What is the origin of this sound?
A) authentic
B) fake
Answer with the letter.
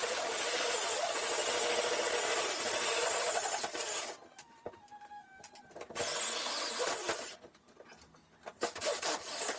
A